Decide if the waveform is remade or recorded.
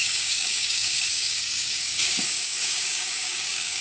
remade